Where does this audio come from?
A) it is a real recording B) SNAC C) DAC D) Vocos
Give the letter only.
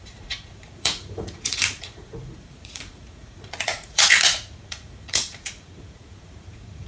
D